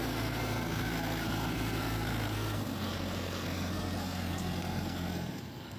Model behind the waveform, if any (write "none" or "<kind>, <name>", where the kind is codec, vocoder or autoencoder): codec, SNAC